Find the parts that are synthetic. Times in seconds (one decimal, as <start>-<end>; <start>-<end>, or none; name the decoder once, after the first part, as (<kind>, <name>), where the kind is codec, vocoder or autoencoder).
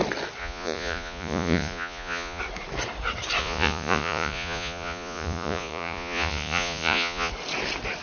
0.4-2.4 (vocoder, Vocos); 3.4-7.3